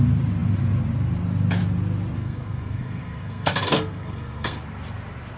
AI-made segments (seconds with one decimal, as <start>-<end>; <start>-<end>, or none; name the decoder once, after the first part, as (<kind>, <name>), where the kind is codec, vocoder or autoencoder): 2.2-4.6 (codec, SNAC)